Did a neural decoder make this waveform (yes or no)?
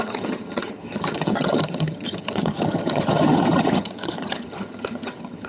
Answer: yes